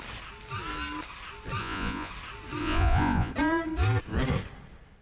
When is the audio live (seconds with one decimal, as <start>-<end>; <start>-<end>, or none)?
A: 0.0-1.6; 2.1-2.6; 3.3-5.0